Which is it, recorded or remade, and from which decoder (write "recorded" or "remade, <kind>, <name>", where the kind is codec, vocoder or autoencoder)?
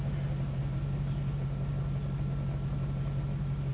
recorded